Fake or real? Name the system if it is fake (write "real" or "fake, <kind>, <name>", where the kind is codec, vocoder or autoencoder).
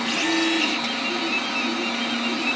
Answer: real